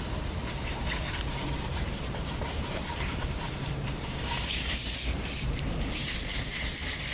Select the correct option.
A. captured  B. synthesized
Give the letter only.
B